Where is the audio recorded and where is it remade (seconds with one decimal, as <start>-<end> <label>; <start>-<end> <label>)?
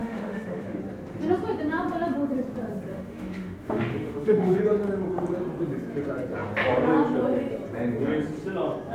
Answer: 0.0-0.8 remade; 0.8-2.9 recorded; 2.9-4.6 remade; 4.6-8.9 recorded